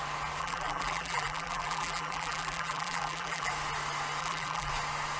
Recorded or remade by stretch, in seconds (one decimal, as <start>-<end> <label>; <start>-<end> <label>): 0.0-0.4 recorded; 0.4-3.5 remade; 3.5-4.2 recorded; 4.2-4.7 remade; 4.7-5.2 recorded